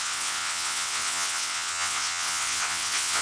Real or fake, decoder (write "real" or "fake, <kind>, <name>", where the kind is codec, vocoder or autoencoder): fake, vocoder, WaveNeXt